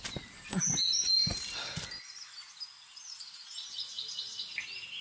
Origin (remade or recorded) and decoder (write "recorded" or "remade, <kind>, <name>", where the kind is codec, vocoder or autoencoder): recorded